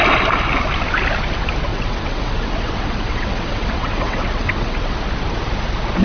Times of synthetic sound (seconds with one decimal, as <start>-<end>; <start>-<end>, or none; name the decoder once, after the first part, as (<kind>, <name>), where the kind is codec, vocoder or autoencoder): 1.7-4.9 (vocoder, WaveNeXt)